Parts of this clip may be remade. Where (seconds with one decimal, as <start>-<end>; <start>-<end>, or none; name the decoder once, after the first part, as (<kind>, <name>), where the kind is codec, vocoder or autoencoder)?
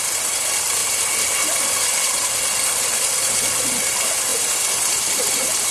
none